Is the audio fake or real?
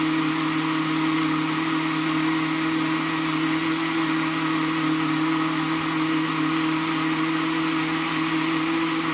real